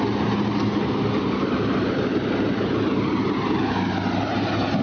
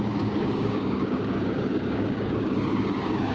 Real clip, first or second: first